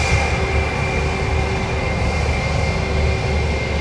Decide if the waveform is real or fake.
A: real